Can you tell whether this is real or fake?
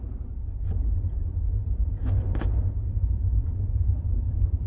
fake